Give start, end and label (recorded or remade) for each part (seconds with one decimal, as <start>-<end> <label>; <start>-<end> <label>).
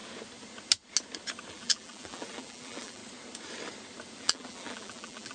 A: 0.0-1.5 recorded; 1.5-3.0 remade; 3.0-4.2 recorded; 4.2-5.3 remade